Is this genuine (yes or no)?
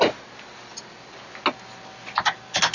yes